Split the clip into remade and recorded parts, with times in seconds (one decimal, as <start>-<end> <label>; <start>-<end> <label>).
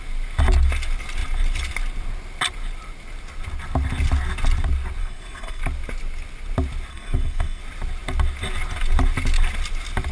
0.0-5.0 recorded; 5.0-5.6 remade; 5.6-6.9 recorded; 6.9-7.6 remade; 7.6-10.1 recorded